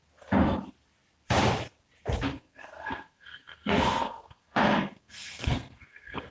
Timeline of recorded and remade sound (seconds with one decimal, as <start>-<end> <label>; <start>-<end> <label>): 0.0-2.3 recorded; 2.3-6.3 remade

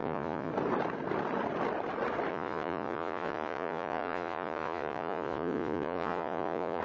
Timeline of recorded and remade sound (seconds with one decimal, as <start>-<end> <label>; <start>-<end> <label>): 0.0-0.5 remade; 0.5-2.3 recorded; 2.3-6.8 remade

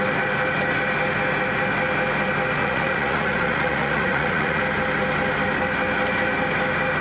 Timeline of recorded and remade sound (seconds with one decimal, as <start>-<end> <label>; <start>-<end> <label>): 0.0-2.6 recorded; 2.6-4.6 remade; 4.6-7.0 recorded

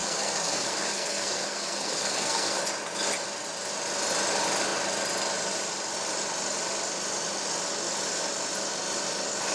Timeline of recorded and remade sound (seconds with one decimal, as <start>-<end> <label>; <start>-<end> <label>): 0.0-2.6 remade; 2.6-9.5 recorded

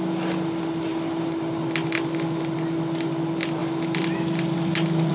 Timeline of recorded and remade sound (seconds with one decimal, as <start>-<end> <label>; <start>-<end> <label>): 0.0-5.1 recorded

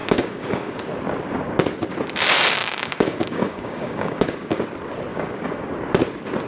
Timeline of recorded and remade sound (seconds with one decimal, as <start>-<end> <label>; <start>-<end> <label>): 0.0-0.8 remade; 0.8-2.6 recorded; 2.6-4.6 remade; 4.6-5.1 recorded; 5.1-5.7 remade; 5.7-6.5 recorded